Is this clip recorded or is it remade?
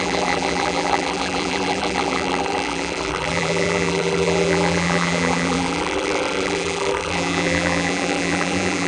remade